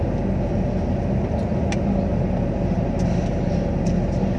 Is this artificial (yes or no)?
no